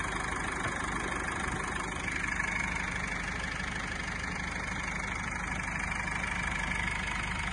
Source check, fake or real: real